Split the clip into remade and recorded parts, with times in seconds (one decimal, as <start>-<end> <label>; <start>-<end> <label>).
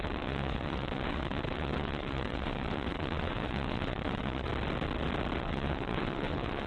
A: 0.0-4.5 remade; 4.5-5.4 recorded; 5.4-6.7 remade